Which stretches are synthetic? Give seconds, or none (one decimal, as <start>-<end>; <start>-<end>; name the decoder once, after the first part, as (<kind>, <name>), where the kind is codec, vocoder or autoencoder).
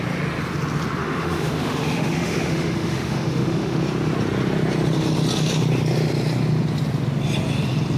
1.0-3.8 (autoencoder, DAC-VAE)